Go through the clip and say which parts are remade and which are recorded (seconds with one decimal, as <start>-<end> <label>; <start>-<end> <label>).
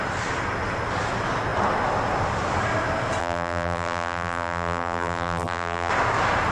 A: 0.0-3.2 recorded; 3.2-5.9 remade; 5.9-6.5 recorded